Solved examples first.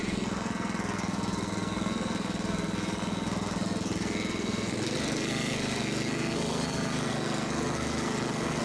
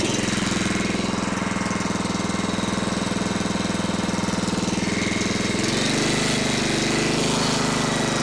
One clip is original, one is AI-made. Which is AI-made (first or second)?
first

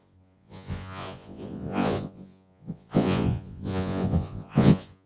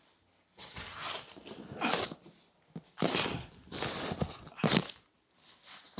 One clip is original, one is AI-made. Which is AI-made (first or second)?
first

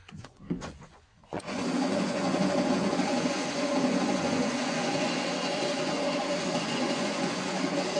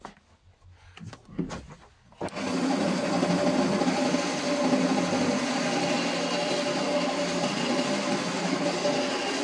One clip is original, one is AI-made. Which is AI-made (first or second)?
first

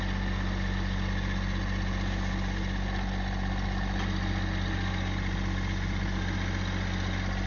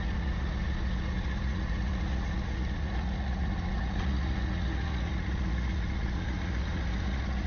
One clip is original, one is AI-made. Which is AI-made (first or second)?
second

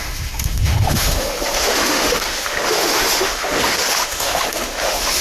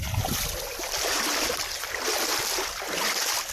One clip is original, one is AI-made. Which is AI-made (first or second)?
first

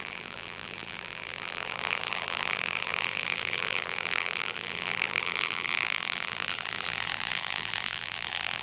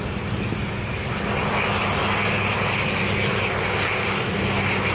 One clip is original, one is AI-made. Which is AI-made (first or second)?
first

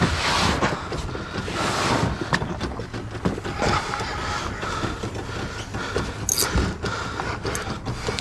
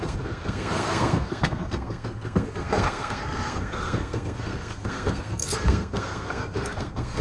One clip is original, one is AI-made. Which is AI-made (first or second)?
second